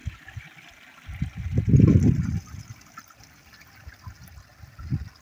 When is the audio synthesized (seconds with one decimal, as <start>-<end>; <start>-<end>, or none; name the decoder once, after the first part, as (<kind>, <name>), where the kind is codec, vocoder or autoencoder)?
none